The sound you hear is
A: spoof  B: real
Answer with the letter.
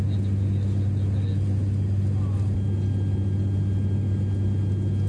B